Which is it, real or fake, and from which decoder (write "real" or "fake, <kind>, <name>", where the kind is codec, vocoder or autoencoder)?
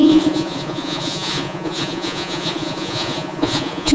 fake, vocoder, Vocos